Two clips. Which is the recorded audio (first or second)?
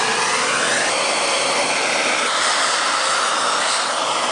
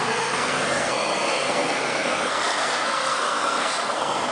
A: first